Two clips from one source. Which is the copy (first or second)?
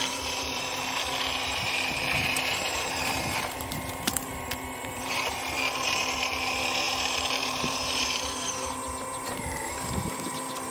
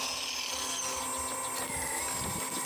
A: first